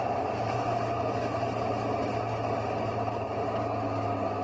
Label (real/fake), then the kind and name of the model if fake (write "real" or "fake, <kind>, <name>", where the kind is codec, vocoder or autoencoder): real